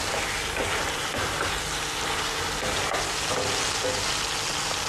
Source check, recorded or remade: recorded